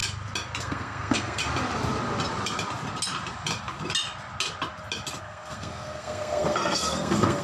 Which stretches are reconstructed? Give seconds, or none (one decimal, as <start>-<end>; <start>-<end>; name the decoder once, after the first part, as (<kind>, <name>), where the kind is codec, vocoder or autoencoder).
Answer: 0.6-1.4 (codec, SNAC); 5.2-7.4

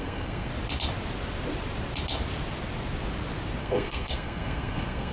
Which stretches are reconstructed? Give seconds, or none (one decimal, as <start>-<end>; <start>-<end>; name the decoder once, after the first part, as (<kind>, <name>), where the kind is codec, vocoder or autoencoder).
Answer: 0.0-0.5 (codec, SNAC); 3.6-5.1